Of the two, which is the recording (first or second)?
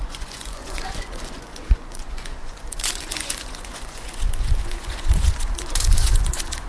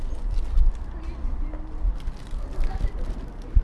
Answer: second